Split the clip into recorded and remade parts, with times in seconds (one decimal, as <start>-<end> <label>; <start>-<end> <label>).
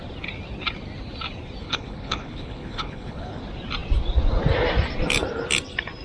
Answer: 0.0-1.6 recorded; 1.6-3.4 remade; 3.4-6.0 recorded